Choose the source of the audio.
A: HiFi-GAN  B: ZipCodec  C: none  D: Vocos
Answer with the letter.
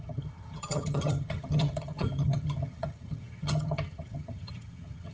A